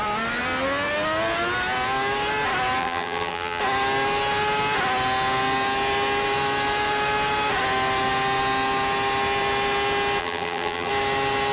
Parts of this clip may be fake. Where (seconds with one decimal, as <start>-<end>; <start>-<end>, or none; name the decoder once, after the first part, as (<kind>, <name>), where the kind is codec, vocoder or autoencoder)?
2.8-3.6 (vocoder, BigVGAN v2); 10.2-10.9